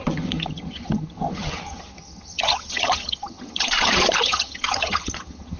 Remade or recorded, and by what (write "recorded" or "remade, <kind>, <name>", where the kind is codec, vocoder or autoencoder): remade, vocoder, HiFi-GAN